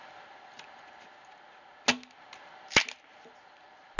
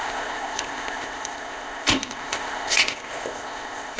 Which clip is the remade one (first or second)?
second